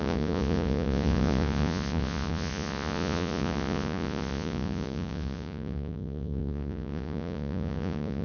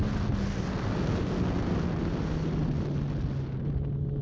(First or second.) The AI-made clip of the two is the first